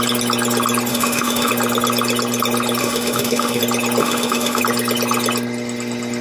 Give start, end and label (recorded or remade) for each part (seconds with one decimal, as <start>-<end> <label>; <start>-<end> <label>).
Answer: 0.0-0.9 recorded; 0.9-1.5 remade; 1.5-2.8 recorded; 2.8-3.6 remade; 3.6-4.0 recorded; 4.0-4.6 remade; 4.6-6.2 recorded

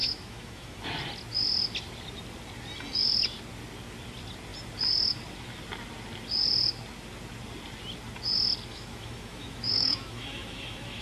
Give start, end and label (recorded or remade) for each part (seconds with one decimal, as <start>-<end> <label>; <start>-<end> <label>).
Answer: 0.0-0.8 remade; 0.8-8.7 recorded; 8.7-11.0 remade